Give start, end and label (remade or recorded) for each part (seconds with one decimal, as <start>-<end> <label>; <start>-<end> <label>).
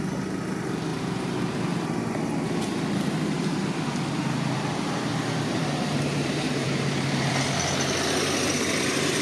0.0-5.1 recorded; 5.1-7.3 remade; 7.3-9.2 recorded